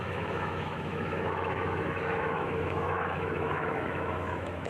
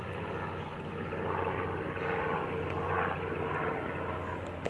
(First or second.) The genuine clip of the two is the second